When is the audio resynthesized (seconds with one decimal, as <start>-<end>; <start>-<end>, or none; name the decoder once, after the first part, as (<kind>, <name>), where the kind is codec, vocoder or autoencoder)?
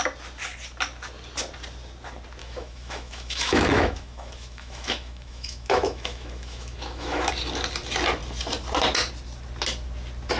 2.4-7.3 (autoencoder, DAC-VAE)